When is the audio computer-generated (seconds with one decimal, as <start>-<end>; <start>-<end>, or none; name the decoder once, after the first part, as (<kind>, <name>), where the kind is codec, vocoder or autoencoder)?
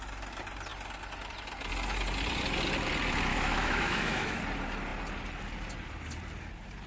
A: 3.3-4.4 (autoencoder, DAC-VAE)